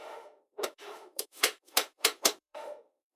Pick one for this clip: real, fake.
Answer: fake